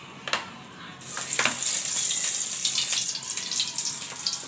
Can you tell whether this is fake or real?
real